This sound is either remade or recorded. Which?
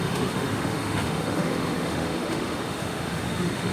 remade